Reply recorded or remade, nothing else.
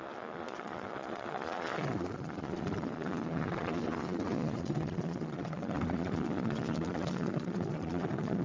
remade